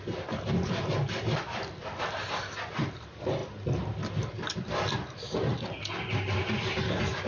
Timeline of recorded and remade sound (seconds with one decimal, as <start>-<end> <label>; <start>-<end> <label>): 0.0-3.4 remade; 3.4-6.8 recorded; 6.8-7.3 remade